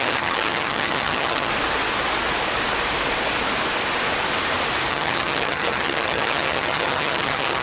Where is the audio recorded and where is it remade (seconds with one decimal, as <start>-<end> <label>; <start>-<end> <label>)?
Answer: 0.0-1.5 remade; 1.5-4.9 recorded; 4.9-7.6 remade